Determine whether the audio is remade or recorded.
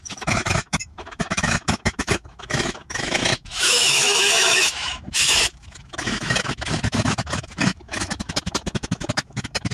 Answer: remade